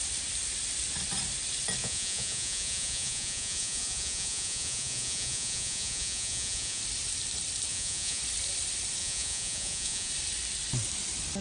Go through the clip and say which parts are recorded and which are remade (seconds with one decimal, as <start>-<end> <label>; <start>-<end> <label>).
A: 0.0-1.8 recorded; 1.8-6.8 remade; 6.8-7.7 recorded; 7.7-8.2 remade; 8.2-9.0 recorded; 9.0-10.1 remade; 10.1-11.4 recorded